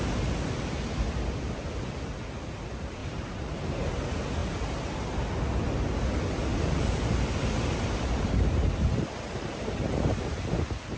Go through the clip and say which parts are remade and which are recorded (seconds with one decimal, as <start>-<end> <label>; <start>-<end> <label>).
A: 0.0-3.0 recorded; 3.0-3.9 remade; 3.9-6.5 recorded; 6.5-10.5 remade; 10.5-11.0 recorded